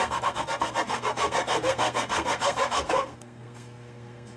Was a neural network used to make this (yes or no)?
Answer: yes